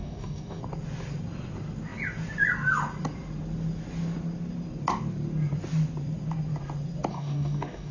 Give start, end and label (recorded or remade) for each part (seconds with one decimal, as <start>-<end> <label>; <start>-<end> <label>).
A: 0.0-0.6 remade; 0.6-7.1 recorded; 7.1-7.9 remade